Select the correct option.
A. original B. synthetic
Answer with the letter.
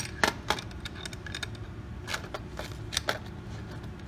A